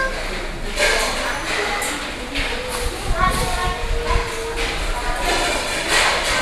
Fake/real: real